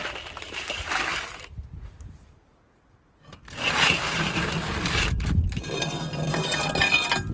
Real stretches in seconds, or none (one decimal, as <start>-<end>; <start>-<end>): 0.0-7.3